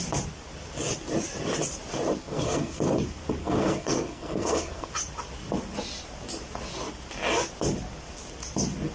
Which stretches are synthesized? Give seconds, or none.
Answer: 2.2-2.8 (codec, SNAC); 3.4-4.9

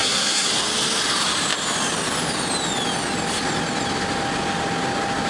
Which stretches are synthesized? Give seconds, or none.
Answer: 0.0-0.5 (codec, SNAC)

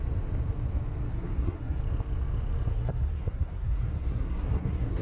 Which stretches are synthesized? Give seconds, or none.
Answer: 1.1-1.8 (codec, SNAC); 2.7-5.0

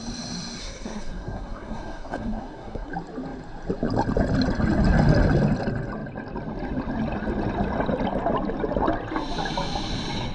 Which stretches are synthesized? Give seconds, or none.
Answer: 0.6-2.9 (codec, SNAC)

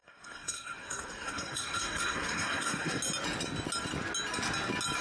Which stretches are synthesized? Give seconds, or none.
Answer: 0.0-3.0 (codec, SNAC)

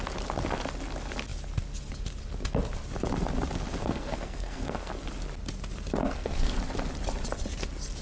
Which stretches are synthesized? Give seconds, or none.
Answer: 3.8-4.9 (codec, SNAC); 6.0-6.6